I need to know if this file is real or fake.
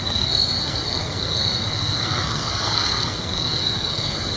fake